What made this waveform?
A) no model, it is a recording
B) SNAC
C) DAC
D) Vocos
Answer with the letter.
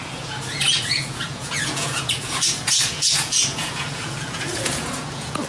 D